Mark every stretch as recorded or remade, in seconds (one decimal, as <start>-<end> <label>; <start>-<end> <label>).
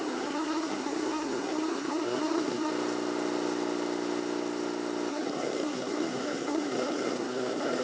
0.0-2.7 remade; 2.7-5.1 recorded; 5.1-7.8 remade